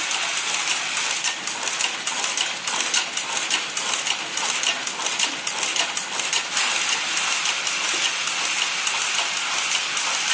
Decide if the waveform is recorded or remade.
recorded